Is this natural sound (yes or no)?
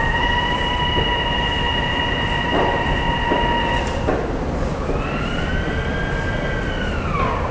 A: no